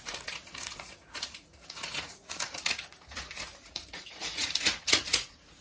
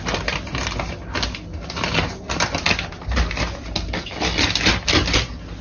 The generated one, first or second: first